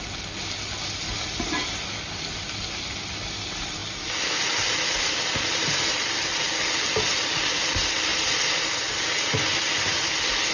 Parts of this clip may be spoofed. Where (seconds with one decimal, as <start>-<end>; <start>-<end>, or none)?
none